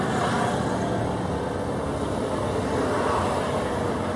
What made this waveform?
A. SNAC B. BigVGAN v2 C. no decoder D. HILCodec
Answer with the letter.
C